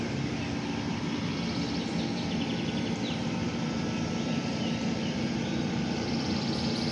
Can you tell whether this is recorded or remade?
remade